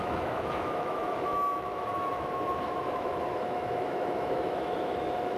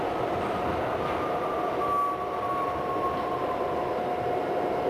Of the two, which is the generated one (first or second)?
first